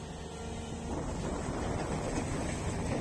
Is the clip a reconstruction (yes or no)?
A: no